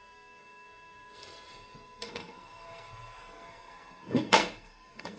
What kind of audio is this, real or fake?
fake